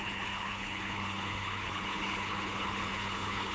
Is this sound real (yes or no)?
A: no